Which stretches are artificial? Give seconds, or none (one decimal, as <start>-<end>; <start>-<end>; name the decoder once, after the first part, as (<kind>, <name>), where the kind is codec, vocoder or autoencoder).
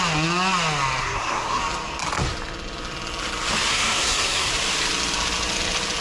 1.0-1.6 (codec, SNAC); 3.7-4.5